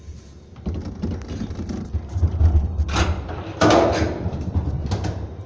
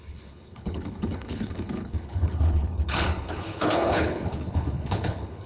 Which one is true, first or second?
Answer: first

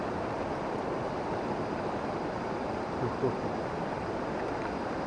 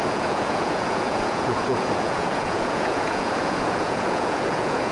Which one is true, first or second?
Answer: first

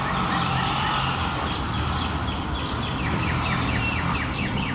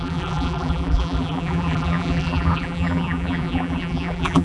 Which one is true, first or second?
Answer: first